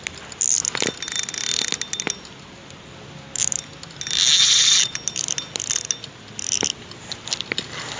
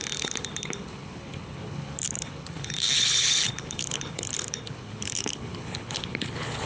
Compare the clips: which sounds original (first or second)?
first